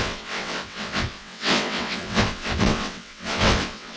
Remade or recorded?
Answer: remade